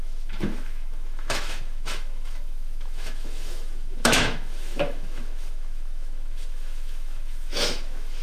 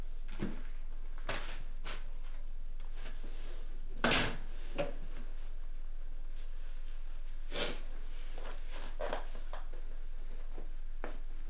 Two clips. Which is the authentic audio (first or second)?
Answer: second